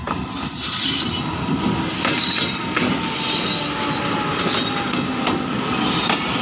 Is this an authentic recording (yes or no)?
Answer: yes